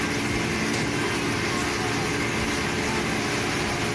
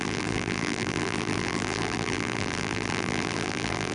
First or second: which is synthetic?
second